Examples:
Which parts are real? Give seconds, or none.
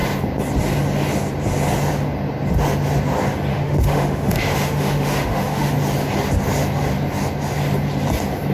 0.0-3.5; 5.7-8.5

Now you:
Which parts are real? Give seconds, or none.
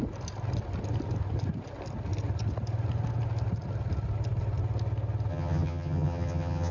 0.0-5.3